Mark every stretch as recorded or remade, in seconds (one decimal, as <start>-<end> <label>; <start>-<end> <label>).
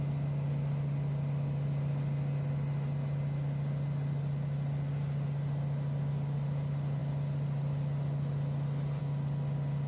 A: 0.0-9.9 recorded